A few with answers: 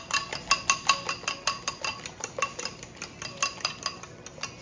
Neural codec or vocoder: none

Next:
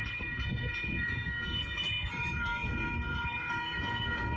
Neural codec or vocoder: codec, SNAC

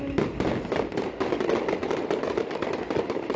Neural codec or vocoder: none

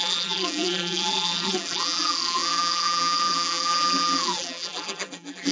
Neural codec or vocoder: vocoder, BigVGAN v2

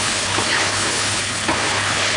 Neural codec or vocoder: codec, HILCodec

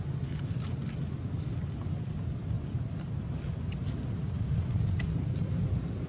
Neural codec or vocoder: none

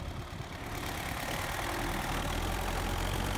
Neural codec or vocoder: vocoder, BigVGAN v2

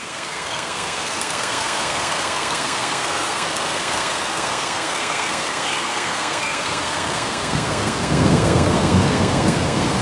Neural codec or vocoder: codec, SNAC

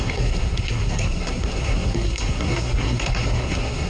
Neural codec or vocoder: codec, SNAC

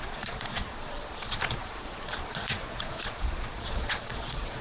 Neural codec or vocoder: vocoder, Vocos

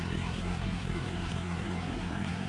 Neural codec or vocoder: codec, SNAC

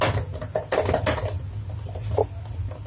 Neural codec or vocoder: none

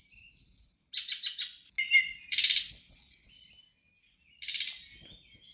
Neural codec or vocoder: none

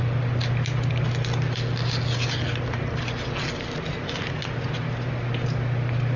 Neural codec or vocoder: none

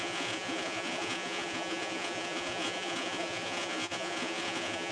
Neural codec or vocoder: vocoder, Vocos